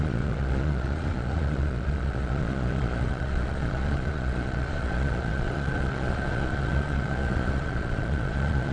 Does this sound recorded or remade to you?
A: remade